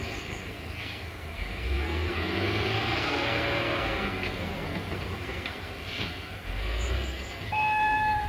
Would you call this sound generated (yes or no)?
yes